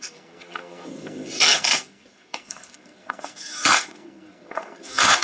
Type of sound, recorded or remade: remade